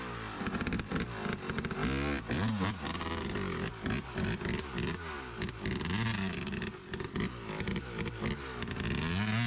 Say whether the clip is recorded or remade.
recorded